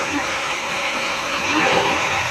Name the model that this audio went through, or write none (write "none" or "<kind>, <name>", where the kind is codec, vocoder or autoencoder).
codec, SNAC